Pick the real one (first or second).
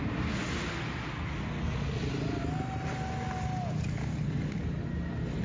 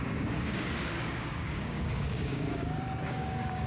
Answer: first